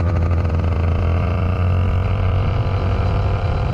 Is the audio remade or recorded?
remade